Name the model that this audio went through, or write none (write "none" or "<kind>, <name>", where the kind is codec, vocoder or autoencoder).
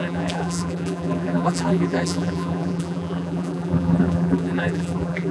vocoder, BigVGAN v2